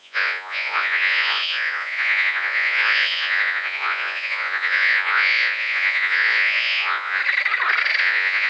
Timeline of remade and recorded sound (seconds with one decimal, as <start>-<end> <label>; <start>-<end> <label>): 0.0-7.2 remade; 7.2-8.0 recorded; 8.0-8.5 remade